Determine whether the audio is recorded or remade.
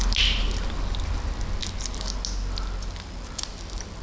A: recorded